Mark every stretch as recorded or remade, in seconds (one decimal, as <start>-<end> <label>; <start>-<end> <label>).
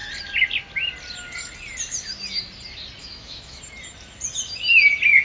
0.0-3.0 recorded; 3.0-3.6 remade; 3.6-5.2 recorded